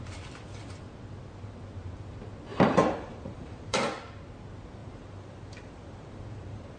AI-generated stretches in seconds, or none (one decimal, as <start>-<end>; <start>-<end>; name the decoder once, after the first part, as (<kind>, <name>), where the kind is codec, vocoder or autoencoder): 2.5-4.0 (vocoder, BigVGAN v2); 4.8-6.8